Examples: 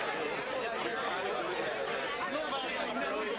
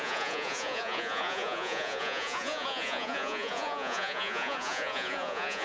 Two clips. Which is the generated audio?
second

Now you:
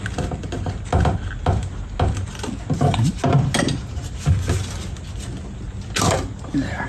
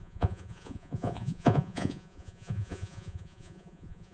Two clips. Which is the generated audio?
second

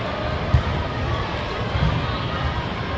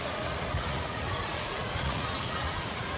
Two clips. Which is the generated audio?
second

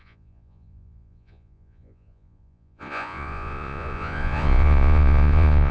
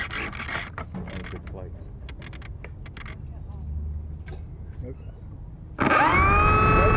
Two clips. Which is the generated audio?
first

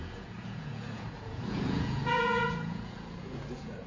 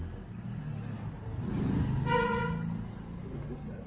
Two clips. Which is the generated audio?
first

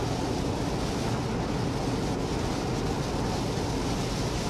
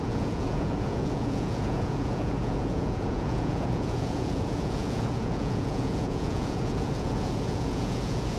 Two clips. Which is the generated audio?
second